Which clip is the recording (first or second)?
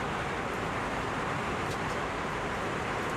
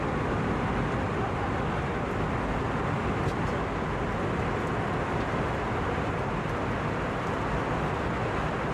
second